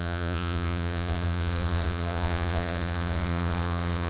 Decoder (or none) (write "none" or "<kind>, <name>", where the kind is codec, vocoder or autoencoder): vocoder, Vocos